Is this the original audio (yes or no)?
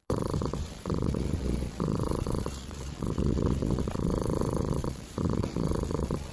no